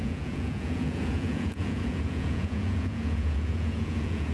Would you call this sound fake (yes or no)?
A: yes